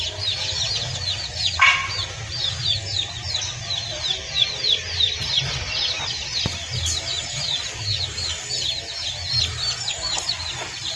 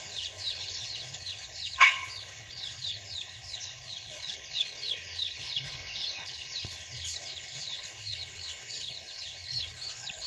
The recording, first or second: first